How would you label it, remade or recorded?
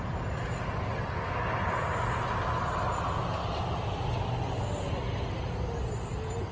recorded